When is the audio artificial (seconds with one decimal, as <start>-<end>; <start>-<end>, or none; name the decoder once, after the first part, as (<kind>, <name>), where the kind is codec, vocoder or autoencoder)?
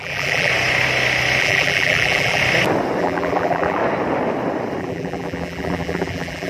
0.0-0.5 (vocoder, BigVGAN v2); 1.4-2.4; 3.0-3.8; 4.8-6.5